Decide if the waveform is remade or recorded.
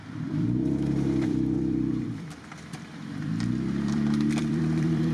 remade